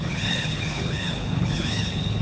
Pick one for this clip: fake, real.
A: fake